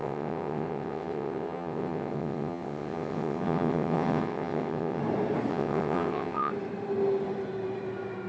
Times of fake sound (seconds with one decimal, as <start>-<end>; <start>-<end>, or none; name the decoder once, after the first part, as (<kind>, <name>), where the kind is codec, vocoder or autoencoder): 0.0-5.0 (vocoder, WaveNeXt); 5.5-6.5